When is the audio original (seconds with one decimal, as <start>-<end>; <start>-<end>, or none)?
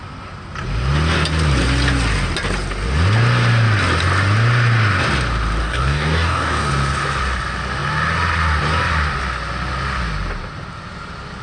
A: 0.0-5.6; 6.7-11.4